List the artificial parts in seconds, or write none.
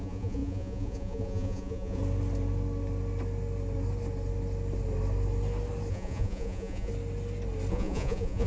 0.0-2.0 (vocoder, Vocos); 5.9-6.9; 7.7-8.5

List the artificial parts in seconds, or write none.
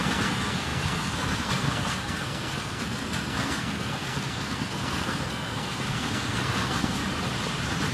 0.0-7.0 (codec, SNAC)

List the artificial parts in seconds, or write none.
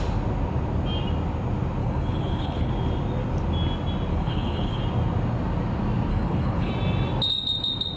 1.8-2.7 (codec, HILCodec); 4.1-4.8; 6.1-6.7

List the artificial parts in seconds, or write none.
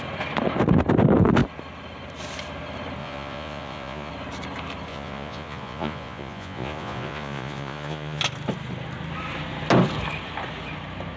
3.0-4.1 (vocoder, Vocos); 4.9-8.2